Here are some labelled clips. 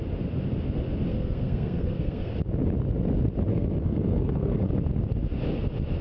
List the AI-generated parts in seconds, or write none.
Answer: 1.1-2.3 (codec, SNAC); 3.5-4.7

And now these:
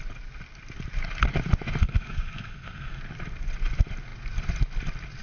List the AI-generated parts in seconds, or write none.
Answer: 1.8-3.0 (codec, SNAC)

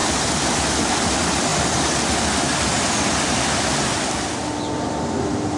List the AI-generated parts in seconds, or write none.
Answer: none

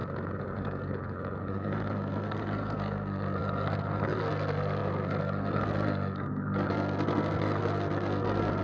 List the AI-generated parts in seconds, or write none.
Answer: 0.0-8.6 (codec, SNAC)

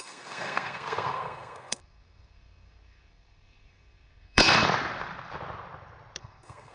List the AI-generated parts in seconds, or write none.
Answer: 0.0-4.6 (codec, SNAC); 6.2-6.7